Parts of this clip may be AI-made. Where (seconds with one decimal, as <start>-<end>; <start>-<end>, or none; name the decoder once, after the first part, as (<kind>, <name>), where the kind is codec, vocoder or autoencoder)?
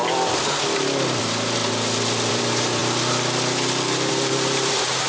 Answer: 1.2-1.6 (vocoder, BigVGAN v2); 2.3-2.8; 4.1-5.1